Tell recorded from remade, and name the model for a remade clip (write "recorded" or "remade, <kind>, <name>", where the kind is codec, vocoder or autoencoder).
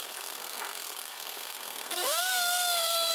remade, codec, SNAC